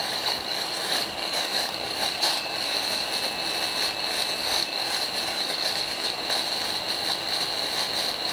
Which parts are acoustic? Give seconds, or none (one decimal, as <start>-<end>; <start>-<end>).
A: 3.1-4.4; 6.2-8.3